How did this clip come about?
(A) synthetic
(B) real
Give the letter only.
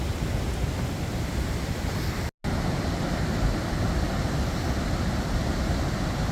B